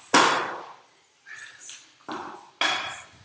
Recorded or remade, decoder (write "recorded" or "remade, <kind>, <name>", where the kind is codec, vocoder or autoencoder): recorded